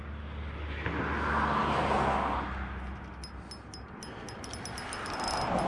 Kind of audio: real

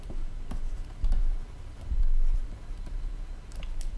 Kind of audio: fake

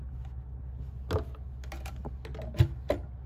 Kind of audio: real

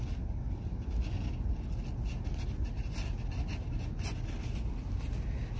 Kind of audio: real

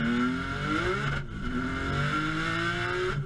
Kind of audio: real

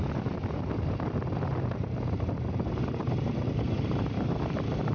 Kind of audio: fake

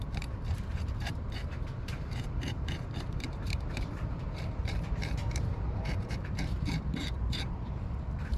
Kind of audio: fake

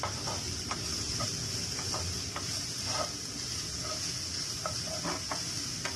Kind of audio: real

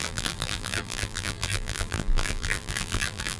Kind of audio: fake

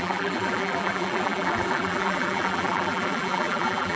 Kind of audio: fake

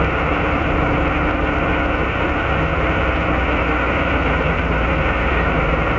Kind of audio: fake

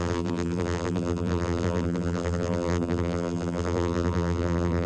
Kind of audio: fake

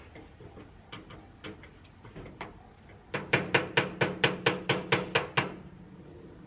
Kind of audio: real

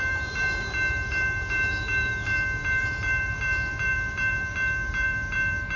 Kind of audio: fake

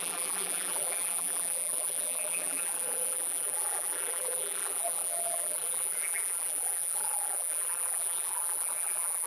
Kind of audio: fake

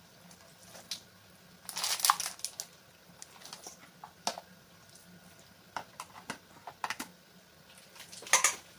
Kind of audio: real